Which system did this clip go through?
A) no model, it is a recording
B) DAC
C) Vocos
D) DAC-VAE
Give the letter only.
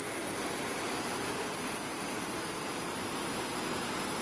A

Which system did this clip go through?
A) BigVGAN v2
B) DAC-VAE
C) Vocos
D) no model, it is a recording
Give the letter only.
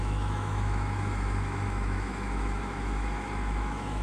B